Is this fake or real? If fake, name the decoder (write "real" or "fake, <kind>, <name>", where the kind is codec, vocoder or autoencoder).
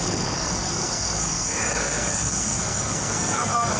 fake, codec, SNAC